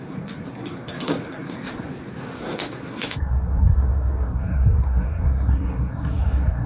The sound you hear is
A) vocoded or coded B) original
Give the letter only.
A